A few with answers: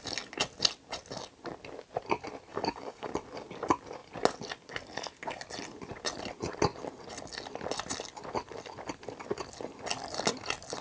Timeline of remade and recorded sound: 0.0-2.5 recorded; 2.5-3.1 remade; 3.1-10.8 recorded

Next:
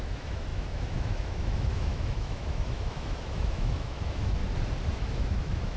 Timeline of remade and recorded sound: 0.0-4.4 remade; 4.4-4.9 recorded; 4.9-5.8 remade

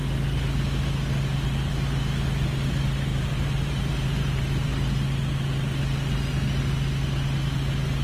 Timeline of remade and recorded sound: 0.0-3.1 recorded; 3.1-4.9 remade; 4.9-8.0 recorded